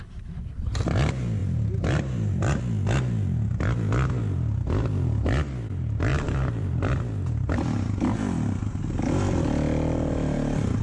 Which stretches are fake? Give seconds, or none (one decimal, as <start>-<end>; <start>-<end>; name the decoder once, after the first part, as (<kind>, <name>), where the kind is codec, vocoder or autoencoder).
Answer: 1.4-2.6 (vocoder, BigVGAN v2); 6.1-7.0